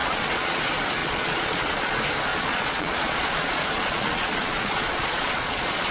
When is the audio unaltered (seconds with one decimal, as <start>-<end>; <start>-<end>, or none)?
0.6-1.0; 1.9-2.3